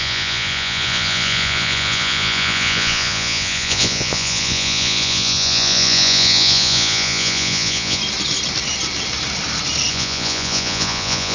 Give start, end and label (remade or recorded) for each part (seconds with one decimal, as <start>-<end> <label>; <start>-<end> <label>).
0.0-8.0 remade; 8.0-9.9 recorded; 9.9-11.3 remade